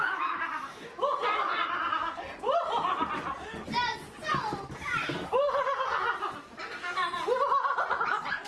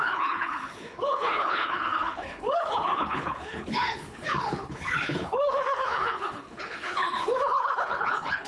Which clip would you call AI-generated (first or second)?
second